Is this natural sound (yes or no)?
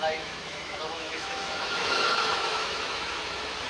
no